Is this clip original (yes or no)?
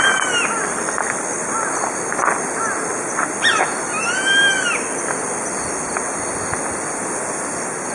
yes